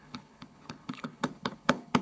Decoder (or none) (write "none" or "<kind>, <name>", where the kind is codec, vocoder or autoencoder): codec, HILCodec